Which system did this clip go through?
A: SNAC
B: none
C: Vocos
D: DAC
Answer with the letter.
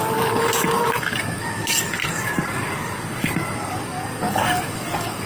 D